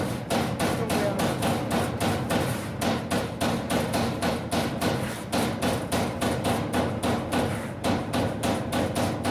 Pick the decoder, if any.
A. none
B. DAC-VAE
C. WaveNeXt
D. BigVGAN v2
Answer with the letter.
A